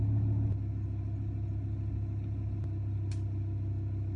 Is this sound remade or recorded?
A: recorded